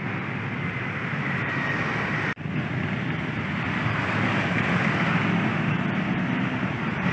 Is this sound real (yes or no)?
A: yes